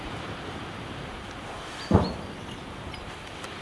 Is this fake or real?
fake